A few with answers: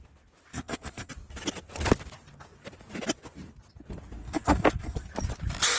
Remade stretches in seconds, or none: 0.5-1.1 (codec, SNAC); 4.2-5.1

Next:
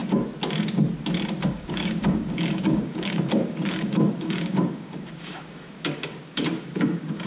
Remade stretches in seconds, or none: 1.5-7.3 (codec, DAC)

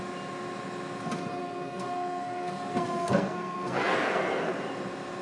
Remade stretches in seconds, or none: 1.4-4.5 (codec, SNAC)

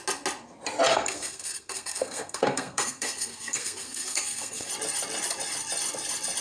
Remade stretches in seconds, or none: 0.9-4.7 (codec, SNAC)

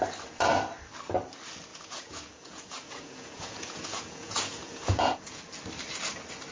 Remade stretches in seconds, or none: 1.7-5.4 (vocoder, Vocos)